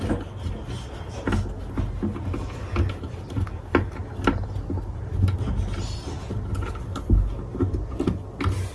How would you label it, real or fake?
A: real